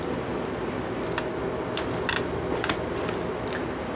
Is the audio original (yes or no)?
yes